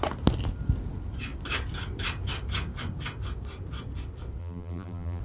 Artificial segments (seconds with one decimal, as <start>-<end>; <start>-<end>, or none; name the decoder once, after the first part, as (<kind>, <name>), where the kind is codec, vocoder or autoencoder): 4.4-5.2 (vocoder, BigVGAN v2)